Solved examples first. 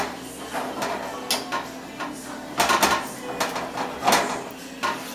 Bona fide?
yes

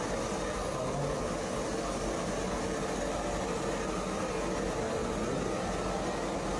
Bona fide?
yes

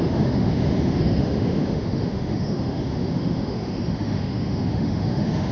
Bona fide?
no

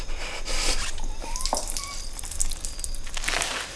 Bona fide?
yes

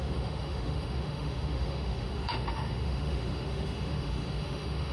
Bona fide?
no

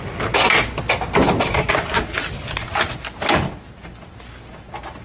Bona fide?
yes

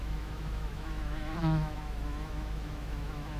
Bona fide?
no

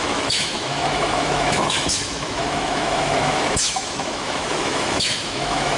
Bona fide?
no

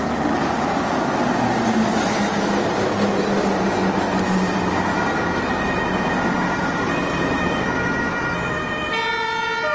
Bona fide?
yes